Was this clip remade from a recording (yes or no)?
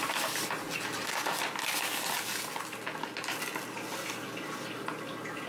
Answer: no